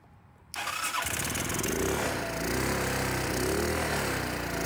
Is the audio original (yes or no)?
yes